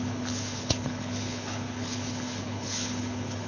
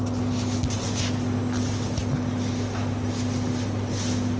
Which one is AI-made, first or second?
first